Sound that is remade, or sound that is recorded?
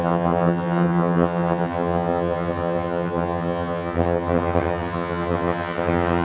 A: remade